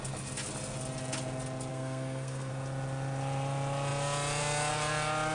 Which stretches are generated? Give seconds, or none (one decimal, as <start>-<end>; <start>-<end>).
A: 1.7-2.5